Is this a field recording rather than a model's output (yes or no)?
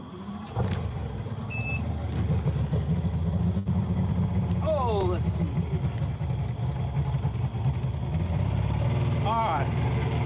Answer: yes